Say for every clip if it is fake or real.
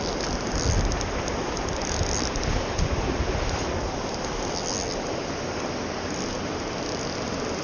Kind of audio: real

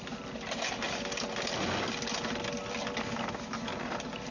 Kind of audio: real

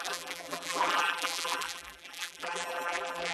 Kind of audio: fake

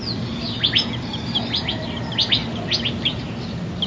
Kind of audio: real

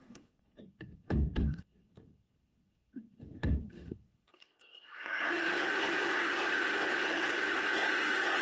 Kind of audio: fake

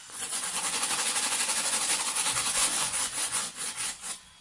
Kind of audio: fake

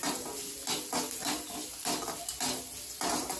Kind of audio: real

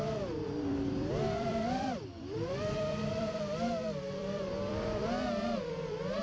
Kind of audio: fake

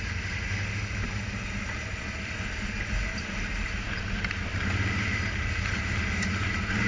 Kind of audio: real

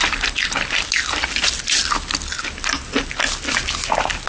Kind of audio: real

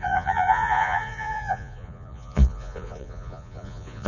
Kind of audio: fake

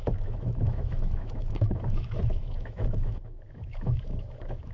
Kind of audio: fake